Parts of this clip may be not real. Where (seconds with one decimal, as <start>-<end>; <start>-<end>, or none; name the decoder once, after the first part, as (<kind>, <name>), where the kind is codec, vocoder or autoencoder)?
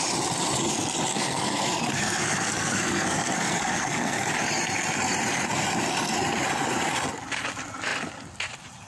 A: 1.1-4.3 (codec, SNAC)